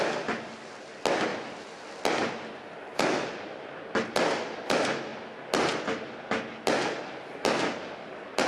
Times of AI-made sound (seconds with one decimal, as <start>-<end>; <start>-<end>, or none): none